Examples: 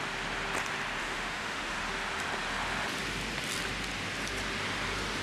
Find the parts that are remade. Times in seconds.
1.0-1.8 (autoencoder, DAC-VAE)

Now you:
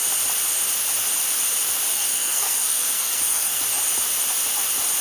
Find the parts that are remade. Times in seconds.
1.9-3.6 (codec, SNAC)

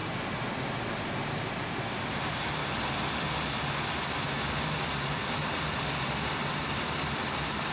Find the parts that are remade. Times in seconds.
none

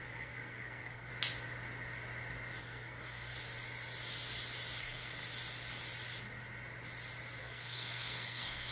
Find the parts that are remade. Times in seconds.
0.0-1.1 (codec, SNAC); 2.6-3.3; 4.8-5.2; 7.4-8.7

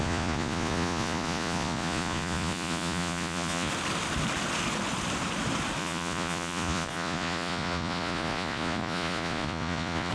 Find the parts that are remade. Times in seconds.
0.0-3.7 (vocoder, Vocos); 5.8-10.1

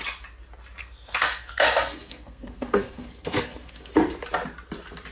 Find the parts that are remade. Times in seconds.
0.8-3.9 (codec, SNAC)